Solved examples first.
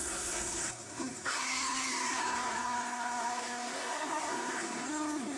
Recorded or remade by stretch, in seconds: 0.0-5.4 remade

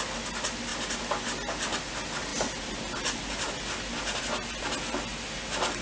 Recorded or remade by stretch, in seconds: 0.0-5.8 recorded